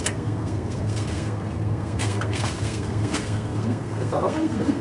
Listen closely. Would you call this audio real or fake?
fake